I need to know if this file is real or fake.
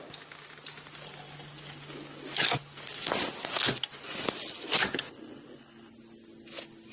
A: real